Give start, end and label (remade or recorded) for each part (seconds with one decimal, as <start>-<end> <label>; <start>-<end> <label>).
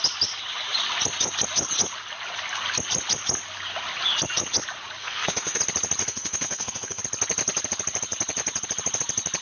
0.0-5.0 recorded; 5.0-5.6 remade; 5.6-6.0 recorded; 6.0-7.0 remade; 7.0-9.4 recorded